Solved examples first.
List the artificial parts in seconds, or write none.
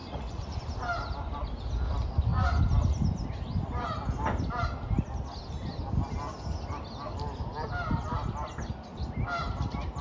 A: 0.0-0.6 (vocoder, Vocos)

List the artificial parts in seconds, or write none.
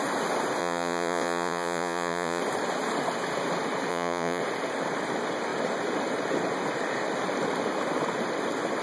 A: 0.6-2.4 (vocoder, Vocos); 3.9-4.4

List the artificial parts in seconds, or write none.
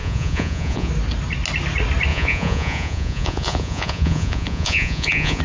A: 0.0-0.9 (vocoder, Vocos); 2.1-5.4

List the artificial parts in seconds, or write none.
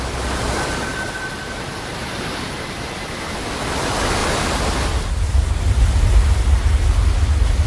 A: none